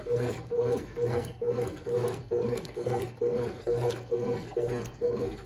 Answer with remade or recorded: remade